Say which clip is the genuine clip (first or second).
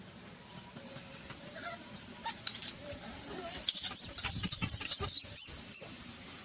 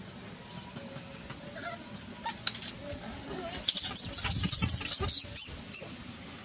second